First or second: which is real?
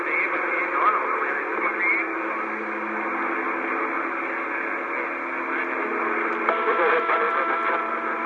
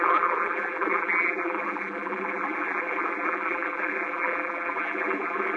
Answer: first